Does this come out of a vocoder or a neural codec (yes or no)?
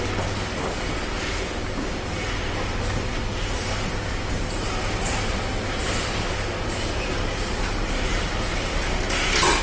no